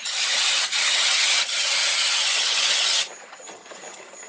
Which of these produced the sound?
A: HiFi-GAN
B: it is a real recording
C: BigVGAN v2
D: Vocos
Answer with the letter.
A